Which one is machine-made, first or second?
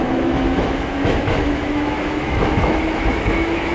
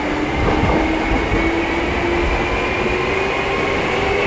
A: first